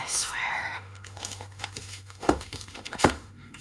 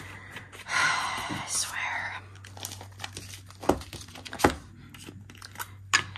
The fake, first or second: first